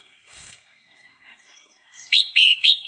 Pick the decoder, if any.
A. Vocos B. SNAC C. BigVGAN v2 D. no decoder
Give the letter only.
B